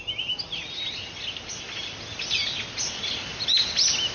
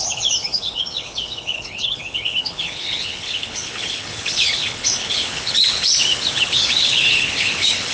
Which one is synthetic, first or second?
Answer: second